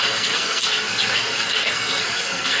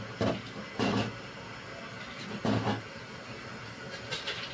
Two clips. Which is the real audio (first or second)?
second